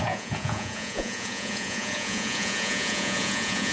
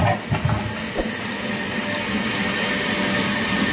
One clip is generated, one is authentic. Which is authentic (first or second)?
second